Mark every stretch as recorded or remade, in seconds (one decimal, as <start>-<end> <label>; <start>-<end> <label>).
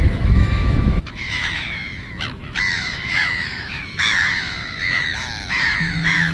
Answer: 0.0-6.3 remade